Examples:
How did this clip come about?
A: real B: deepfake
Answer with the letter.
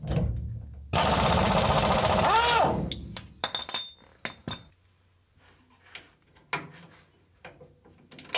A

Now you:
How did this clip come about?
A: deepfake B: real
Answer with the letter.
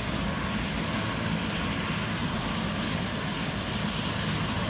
B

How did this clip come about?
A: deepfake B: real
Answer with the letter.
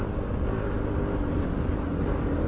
B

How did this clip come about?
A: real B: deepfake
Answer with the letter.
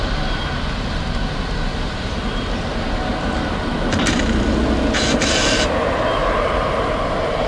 A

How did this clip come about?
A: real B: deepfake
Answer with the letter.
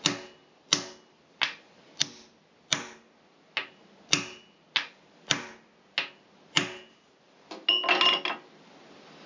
A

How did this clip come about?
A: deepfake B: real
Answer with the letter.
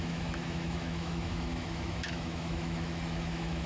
A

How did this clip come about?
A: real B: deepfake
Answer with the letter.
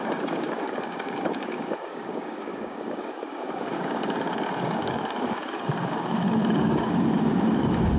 B